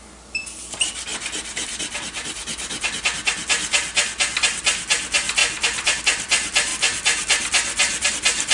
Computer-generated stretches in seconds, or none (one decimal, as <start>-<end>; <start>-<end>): 5.4-6.0